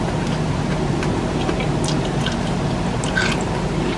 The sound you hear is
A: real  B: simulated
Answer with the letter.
A